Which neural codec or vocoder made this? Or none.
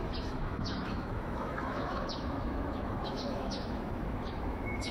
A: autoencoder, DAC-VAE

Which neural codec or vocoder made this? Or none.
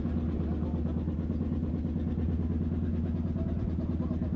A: none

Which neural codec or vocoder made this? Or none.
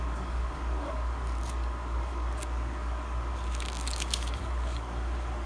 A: codec, DAC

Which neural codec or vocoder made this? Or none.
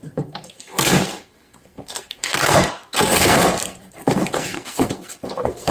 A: codec, SNAC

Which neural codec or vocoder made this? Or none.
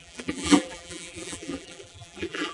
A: vocoder, BigVGAN v2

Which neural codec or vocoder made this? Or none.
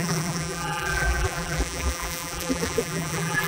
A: vocoder, BigVGAN v2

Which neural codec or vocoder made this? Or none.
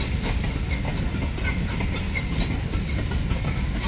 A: none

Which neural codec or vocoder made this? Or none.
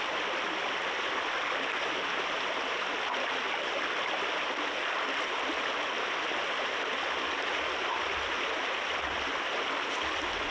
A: none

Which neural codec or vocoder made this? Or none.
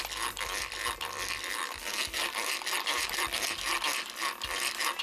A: none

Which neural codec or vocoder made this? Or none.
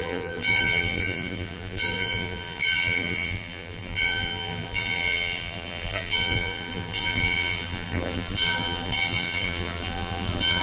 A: vocoder, BigVGAN v2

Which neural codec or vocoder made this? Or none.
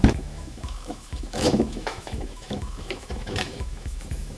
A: autoencoder, DAC-VAE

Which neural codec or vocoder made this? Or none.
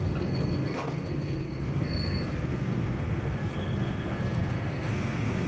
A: codec, SNAC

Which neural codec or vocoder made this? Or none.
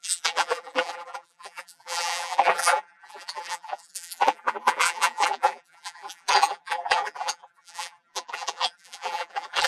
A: vocoder, BigVGAN v2